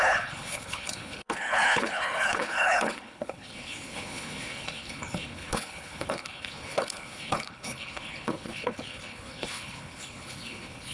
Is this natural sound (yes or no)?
no